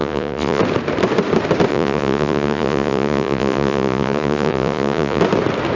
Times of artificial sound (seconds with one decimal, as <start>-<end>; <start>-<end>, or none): 0.0-0.6; 1.7-5.2